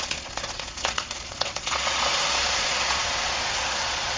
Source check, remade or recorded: remade